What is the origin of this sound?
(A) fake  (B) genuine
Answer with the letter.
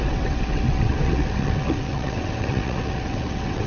A